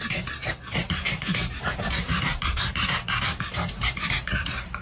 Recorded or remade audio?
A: remade